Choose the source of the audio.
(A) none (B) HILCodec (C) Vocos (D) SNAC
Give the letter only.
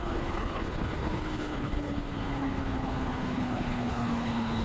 B